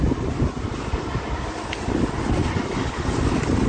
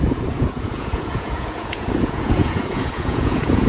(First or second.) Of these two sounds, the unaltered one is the first